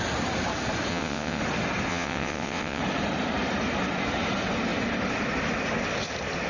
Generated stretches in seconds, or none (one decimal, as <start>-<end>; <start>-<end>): 0.9-1.4; 1.9-2.8